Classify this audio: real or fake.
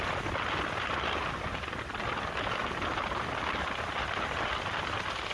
real